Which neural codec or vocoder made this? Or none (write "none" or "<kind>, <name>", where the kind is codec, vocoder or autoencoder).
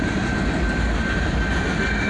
none